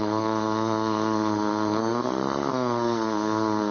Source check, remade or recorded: remade